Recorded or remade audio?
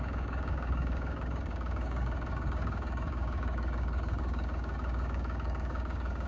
remade